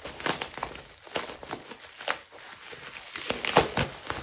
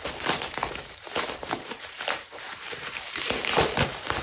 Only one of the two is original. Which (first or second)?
first